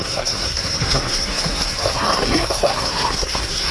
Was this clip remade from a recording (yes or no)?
yes